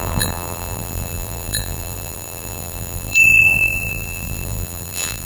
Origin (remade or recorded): remade